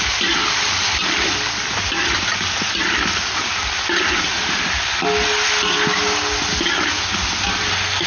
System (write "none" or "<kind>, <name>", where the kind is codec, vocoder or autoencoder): none